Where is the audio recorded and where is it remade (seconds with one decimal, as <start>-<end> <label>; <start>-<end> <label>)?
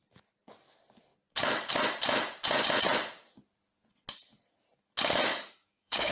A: 0.0-5.3 recorded; 5.3-6.1 remade